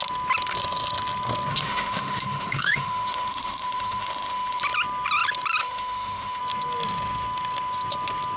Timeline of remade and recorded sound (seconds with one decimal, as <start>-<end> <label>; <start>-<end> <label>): 0.0-1.5 recorded; 1.5-4.6 remade; 4.6-5.6 recorded; 5.6-6.4 remade; 6.4-8.4 recorded